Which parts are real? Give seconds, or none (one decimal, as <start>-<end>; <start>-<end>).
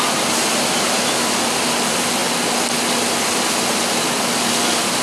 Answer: 0.0-5.0